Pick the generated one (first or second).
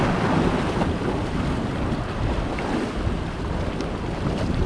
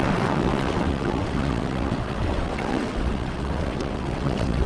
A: second